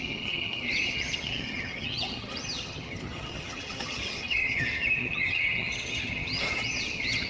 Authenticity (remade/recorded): remade